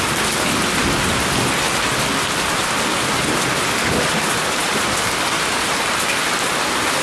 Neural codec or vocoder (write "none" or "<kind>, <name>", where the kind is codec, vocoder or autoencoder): none